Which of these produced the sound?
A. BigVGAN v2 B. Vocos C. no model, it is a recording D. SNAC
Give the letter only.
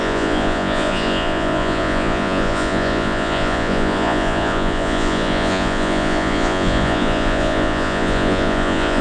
B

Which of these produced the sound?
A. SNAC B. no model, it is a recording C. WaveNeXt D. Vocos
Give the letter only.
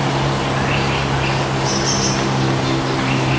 B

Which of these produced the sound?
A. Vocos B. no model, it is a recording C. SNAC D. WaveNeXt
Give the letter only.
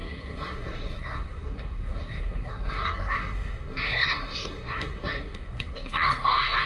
C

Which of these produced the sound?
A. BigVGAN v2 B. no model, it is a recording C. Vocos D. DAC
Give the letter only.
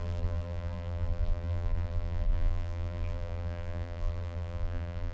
A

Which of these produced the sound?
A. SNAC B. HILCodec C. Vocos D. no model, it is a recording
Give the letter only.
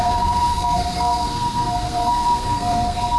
A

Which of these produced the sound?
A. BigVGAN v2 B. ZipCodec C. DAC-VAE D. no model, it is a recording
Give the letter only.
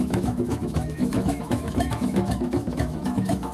C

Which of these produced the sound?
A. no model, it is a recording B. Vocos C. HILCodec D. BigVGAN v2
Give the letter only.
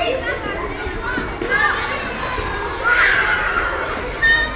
A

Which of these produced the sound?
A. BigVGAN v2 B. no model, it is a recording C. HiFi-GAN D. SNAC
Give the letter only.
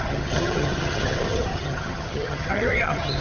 C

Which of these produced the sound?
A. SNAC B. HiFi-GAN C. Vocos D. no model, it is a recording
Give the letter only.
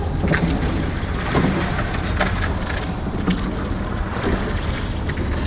D